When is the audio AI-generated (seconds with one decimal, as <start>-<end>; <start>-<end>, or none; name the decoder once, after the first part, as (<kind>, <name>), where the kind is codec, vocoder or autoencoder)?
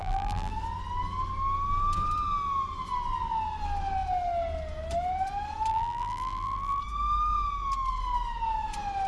0.0-0.5 (vocoder, BigVGAN v2); 5.7-6.8